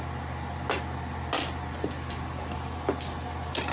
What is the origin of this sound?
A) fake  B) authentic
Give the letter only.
B